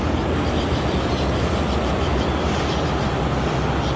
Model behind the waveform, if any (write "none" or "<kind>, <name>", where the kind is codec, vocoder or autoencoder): none